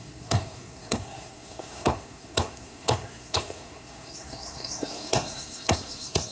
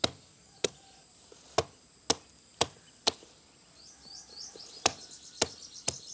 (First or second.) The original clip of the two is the second